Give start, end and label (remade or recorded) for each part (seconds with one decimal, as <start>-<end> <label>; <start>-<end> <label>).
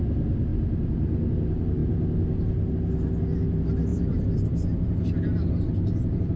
0.0-3.9 recorded; 3.9-6.4 remade